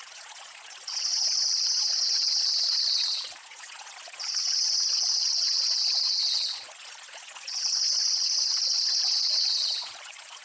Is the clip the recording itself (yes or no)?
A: no